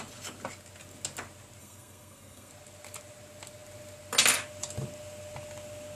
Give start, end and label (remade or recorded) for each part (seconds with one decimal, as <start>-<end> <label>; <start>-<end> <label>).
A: 0.0-1.6 recorded; 1.6-2.5 remade; 2.5-6.0 recorded